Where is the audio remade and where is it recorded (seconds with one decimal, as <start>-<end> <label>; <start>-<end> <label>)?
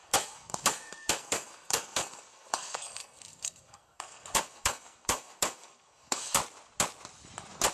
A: 0.0-6.4 remade; 6.4-7.7 recorded